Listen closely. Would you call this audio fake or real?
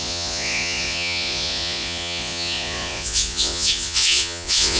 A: fake